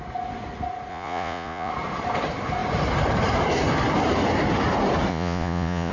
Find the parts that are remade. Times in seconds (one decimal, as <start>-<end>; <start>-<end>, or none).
0.9-1.7; 5.1-5.9